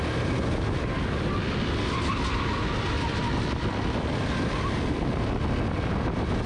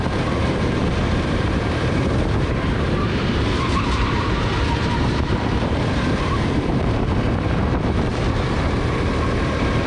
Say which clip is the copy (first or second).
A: second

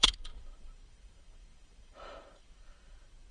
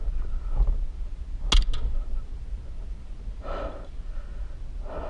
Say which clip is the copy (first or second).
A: first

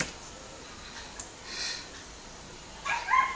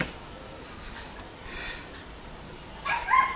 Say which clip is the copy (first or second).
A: second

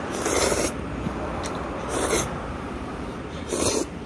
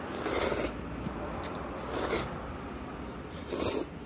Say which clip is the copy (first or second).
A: first